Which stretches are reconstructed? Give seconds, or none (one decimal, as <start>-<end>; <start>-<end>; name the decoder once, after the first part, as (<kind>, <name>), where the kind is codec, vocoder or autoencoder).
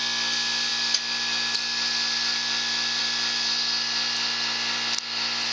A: 0.7-3.0 (vocoder, BigVGAN v2)